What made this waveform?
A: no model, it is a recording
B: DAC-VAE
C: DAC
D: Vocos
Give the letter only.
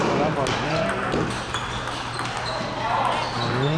A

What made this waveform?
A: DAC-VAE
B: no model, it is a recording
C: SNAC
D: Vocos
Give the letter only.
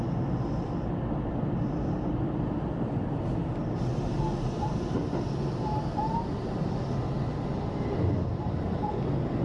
B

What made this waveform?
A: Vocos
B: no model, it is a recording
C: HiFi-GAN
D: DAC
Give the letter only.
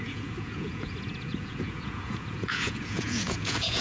A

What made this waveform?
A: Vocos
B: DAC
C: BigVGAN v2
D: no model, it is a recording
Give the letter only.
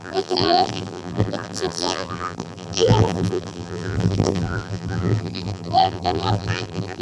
C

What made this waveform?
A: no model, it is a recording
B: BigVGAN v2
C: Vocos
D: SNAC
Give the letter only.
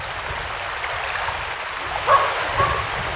A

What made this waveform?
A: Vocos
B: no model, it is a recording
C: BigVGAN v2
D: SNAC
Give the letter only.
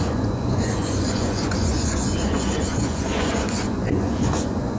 A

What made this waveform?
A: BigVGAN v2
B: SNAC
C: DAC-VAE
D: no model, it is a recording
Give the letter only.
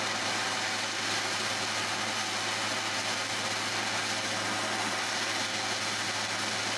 D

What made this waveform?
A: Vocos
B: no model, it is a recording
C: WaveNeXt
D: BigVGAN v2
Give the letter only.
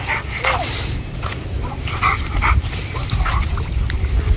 B